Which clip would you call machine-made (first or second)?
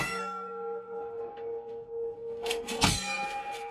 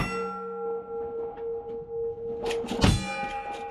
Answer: first